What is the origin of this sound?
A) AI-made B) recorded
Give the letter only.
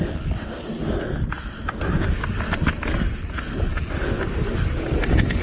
B